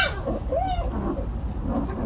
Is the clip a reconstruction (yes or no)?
no